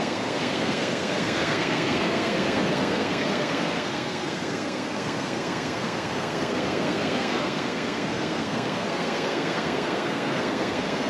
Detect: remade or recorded remade